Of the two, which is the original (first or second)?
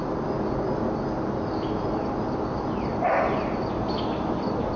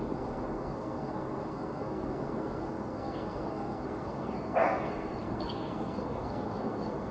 first